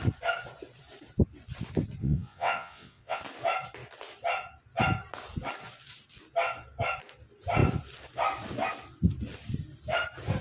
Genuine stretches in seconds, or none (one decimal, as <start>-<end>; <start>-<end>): 0.0-2.0; 3.2-10.4